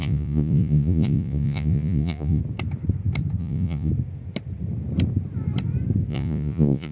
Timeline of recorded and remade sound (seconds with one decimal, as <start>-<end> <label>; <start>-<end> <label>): 0.0-2.4 remade; 2.4-3.4 recorded; 3.4-3.9 remade; 3.9-6.1 recorded; 6.1-6.9 remade